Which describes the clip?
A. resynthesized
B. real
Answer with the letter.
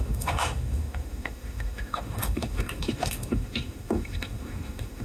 A